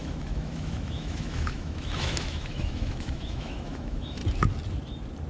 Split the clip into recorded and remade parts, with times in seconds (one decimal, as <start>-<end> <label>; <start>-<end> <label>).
0.0-4.2 remade; 4.2-5.3 recorded